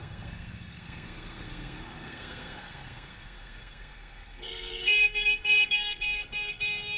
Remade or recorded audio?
remade